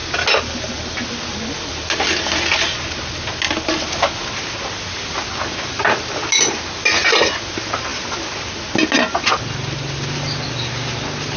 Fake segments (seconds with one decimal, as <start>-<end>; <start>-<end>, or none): none